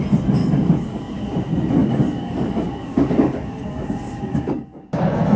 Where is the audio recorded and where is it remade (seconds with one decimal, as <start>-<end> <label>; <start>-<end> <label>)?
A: 0.0-0.4 recorded; 0.4-1.2 remade; 1.2-1.8 recorded; 1.8-5.0 remade; 5.0-5.4 recorded